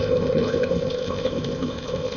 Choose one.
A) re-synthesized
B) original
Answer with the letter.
A